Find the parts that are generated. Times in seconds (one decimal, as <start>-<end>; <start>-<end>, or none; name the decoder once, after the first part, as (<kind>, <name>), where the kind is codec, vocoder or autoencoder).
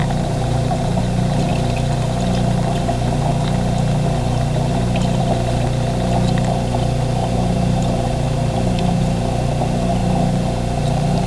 0.0-1.0 (vocoder, BigVGAN v2); 7.2-9.2